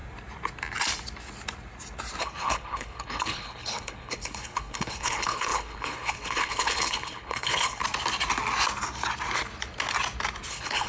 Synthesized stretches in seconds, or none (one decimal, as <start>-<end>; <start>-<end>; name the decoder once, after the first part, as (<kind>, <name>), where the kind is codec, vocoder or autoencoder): 2.2-7.8 (codec, HILCodec); 10.5-10.9